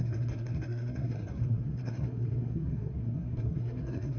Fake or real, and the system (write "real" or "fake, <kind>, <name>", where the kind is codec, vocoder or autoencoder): fake, codec, SNAC